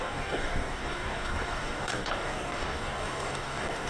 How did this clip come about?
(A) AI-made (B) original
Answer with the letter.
A